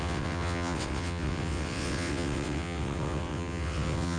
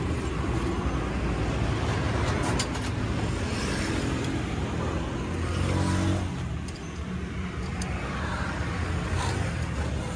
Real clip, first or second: second